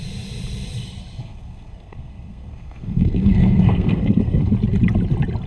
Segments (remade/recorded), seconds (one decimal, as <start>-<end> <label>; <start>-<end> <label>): 0.0-1.2 recorded; 1.2-4.5 remade; 4.5-5.5 recorded